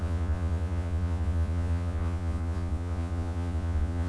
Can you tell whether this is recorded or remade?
remade